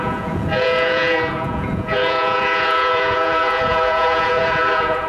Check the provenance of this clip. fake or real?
fake